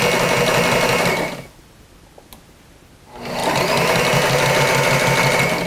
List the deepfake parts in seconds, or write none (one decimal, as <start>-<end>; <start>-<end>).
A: none